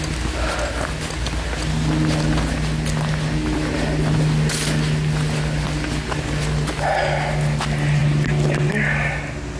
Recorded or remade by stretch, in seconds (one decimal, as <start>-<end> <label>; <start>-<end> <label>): 0.0-9.6 recorded